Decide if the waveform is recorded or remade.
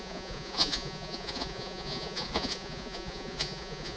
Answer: remade